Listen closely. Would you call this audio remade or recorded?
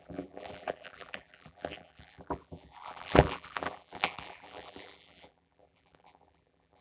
remade